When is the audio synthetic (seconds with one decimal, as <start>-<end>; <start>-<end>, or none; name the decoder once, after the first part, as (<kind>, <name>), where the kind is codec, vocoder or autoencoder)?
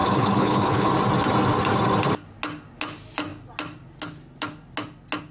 0.0-0.9 (codec, HILCodec)